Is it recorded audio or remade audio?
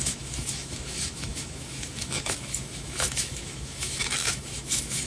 remade